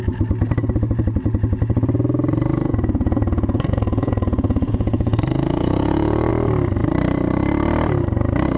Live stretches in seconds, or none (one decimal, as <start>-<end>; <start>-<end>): 0.0-2.5; 6.3-8.6